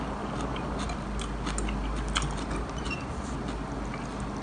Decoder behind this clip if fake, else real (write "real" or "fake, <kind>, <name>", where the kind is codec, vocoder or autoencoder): real